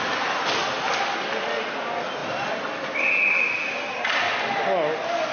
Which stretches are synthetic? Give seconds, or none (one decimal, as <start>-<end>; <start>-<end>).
none